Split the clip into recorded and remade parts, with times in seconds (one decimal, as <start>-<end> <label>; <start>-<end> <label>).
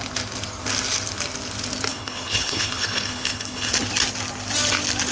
0.0-1.9 recorded; 1.9-3.7 remade; 3.7-5.1 recorded